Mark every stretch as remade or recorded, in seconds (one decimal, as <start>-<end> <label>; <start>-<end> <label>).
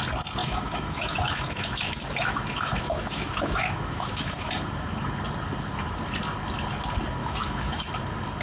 0.0-0.4 recorded; 0.4-4.5 remade; 4.5-7.2 recorded; 7.2-7.8 remade; 7.8-8.4 recorded